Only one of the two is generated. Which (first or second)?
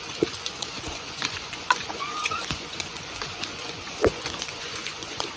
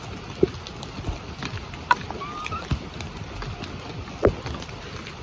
first